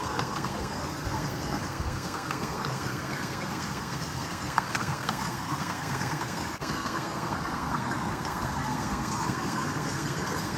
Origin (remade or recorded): remade